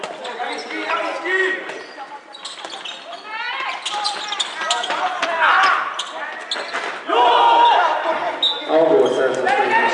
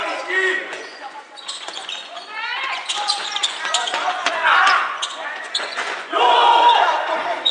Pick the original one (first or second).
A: first